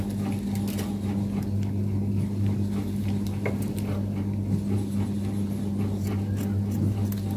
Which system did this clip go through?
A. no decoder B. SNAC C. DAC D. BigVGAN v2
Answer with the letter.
A